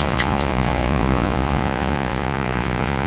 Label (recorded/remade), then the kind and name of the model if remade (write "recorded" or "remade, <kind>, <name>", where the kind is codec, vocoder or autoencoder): remade, vocoder, Vocos